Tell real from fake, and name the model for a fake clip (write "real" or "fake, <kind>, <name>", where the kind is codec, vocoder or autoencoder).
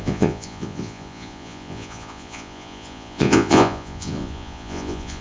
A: fake, vocoder, Vocos